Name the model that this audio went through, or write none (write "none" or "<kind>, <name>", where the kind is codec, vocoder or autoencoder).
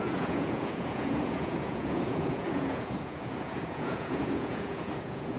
vocoder, Vocos